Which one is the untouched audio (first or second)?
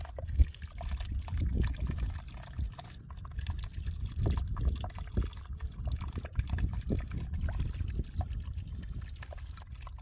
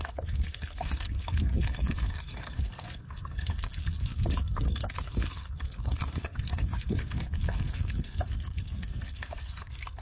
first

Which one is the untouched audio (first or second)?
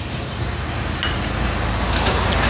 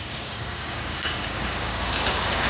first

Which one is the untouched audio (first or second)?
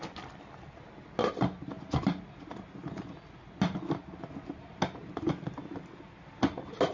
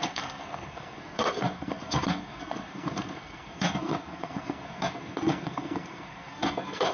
first